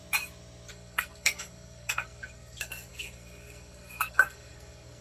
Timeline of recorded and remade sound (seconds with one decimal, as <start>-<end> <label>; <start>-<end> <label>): 0.0-0.7 recorded; 0.7-5.0 remade